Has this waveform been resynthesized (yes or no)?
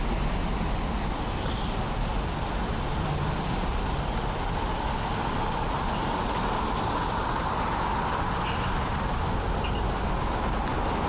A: no